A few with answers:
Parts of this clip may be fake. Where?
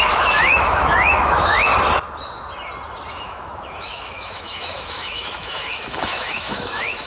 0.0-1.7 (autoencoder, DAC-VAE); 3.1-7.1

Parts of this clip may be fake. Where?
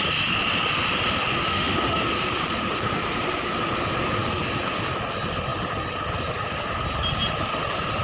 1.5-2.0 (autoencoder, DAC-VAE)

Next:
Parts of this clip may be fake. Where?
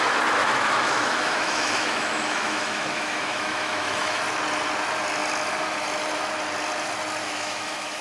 0.4-4.2 (autoencoder, DAC-VAE); 7.2-8.0